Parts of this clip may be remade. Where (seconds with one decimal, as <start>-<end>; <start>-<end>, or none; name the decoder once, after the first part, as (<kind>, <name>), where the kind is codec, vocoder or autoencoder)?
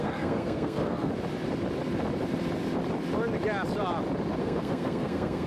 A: 0.0-1.1 (codec, SNAC); 4.4-5.5